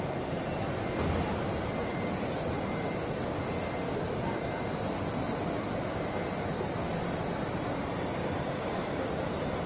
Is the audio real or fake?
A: real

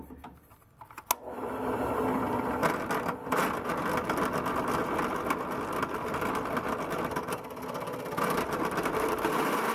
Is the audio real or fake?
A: real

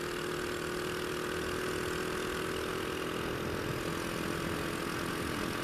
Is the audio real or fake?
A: real